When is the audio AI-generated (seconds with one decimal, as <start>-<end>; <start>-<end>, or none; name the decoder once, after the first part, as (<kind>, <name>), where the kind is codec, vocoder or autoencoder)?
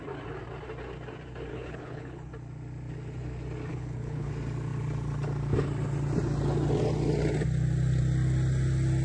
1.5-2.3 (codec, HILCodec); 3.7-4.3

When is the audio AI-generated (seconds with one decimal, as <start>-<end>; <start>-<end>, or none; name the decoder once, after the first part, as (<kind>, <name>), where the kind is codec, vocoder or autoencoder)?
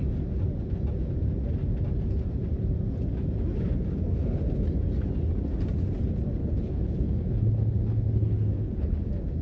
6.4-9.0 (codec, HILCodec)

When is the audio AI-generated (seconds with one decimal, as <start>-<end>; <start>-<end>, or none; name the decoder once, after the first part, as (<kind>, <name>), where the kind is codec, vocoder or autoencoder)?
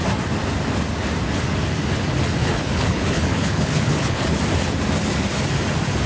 2.4-4.4 (codec, HILCodec)